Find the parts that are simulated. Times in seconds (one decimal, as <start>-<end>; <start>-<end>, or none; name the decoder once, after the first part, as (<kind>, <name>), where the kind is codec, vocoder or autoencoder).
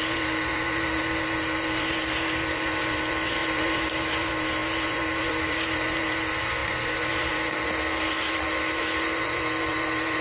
0.0-10.2 (vocoder, BigVGAN v2)